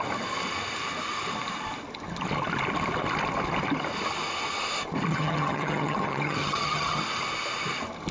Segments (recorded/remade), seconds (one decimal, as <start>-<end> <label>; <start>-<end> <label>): 0.0-5.1 recorded; 5.1-7.0 remade; 7.0-8.1 recorded